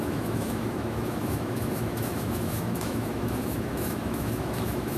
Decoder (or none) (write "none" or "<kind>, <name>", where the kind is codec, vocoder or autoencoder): autoencoder, DAC-VAE